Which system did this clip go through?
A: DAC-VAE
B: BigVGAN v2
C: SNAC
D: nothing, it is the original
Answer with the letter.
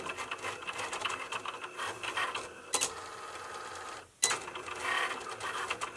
D